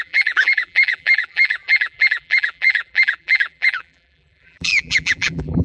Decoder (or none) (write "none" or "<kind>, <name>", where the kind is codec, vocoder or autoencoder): vocoder, BigVGAN v2